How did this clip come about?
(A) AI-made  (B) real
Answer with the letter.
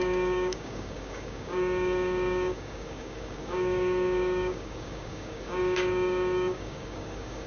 A